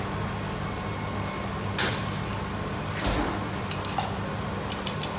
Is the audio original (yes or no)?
yes